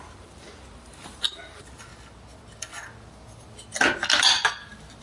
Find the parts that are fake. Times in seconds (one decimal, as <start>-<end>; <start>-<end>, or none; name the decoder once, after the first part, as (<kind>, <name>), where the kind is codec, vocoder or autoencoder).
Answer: 0.0-1.9 (vocoder, BigVGAN v2)